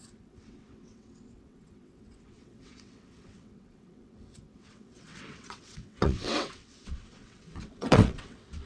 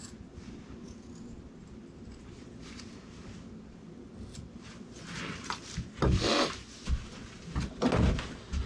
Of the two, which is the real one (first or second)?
second